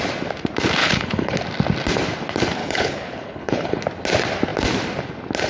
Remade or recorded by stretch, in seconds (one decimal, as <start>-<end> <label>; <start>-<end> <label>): 0.0-0.8 recorded; 0.8-1.4 remade; 1.4-2.6 recorded; 2.6-3.8 remade; 3.8-5.5 recorded